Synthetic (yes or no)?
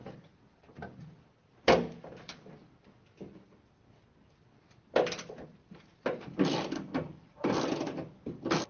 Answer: no